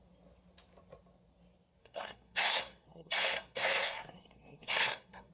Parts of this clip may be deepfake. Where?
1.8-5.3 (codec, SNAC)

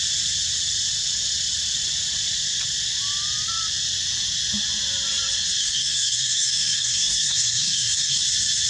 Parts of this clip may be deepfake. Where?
5.6-8.2 (codec, SNAC)

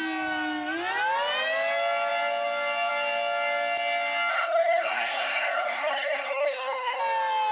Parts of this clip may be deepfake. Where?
4.3-7.0 (codec, SNAC)

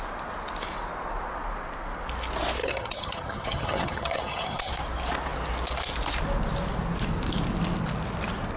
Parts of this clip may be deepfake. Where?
2.6-4.7 (vocoder, HiFi-GAN)

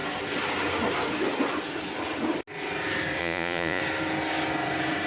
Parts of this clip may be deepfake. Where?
3.2-3.8 (vocoder, Vocos)

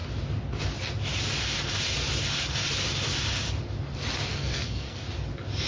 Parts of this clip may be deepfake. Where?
4.3-5.0 (codec, SNAC)

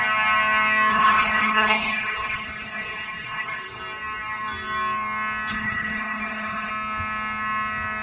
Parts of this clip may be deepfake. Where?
0.9-3.8 (codec, HILCodec); 5.5-6.7